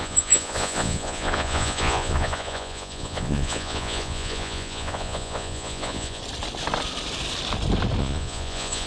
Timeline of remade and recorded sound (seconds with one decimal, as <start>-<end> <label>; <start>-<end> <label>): 0.0-6.2 remade; 6.2-8.0 recorded; 8.0-8.9 remade